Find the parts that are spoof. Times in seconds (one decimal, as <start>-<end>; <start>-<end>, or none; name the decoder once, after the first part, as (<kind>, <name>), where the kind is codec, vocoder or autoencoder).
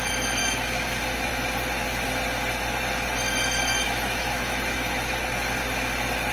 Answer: 0.4-1.3 (autoencoder, DAC-VAE); 3.7-5.1